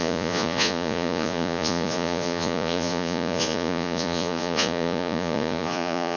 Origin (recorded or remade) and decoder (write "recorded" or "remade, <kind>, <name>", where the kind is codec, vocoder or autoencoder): remade, vocoder, Vocos